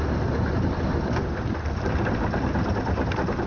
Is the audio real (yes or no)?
yes